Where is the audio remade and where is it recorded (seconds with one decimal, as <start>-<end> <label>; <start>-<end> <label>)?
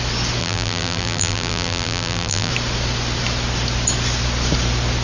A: 0.0-0.4 recorded; 0.4-2.5 remade; 2.5-5.0 recorded